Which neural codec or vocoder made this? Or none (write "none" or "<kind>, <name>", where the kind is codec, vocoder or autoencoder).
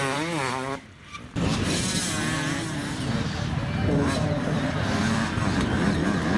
none